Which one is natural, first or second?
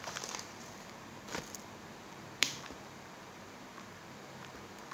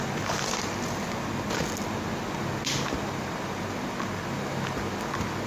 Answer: second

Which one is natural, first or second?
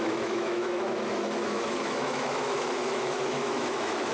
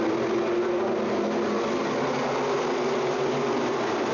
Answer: second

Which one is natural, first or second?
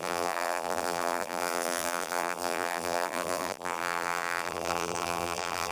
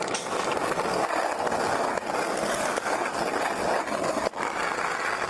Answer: second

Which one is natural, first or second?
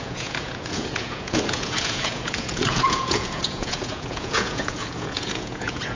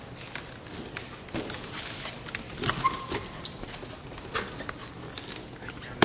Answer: second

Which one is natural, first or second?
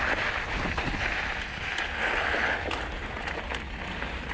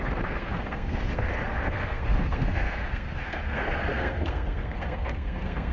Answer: first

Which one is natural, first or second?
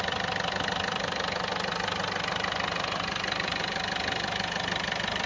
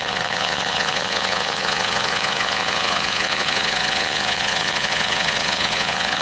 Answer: first